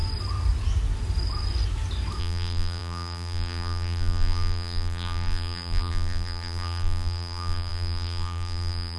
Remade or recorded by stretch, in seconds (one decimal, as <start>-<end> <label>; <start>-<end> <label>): 0.0-2.2 recorded; 2.2-9.0 remade